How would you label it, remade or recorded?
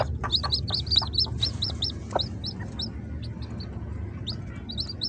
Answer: recorded